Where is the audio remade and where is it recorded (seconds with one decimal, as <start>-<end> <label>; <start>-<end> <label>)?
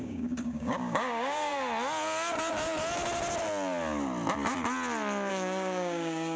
0.0-1.5 remade; 1.5-5.3 recorded; 5.3-6.4 remade